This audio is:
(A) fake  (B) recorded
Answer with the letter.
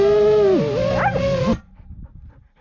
B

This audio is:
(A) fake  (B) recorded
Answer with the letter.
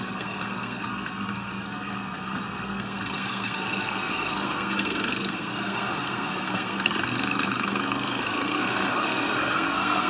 A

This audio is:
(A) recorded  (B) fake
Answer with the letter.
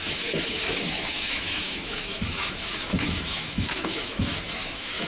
B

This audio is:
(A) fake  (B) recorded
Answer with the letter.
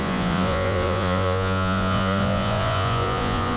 A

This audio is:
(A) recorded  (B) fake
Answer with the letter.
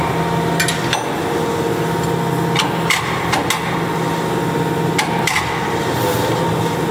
A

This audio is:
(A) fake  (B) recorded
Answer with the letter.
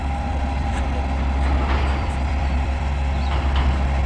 A